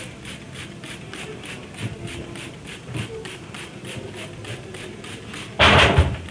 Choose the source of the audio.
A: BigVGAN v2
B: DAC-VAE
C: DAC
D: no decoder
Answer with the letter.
D